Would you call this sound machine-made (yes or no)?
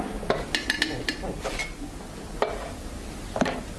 no